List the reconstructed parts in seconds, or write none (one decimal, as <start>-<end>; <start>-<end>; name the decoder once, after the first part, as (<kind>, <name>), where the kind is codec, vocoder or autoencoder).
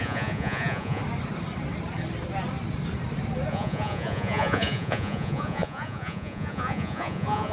0.0-1.0 (vocoder, Vocos); 3.5-7.5